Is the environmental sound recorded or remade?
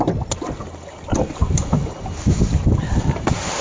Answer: recorded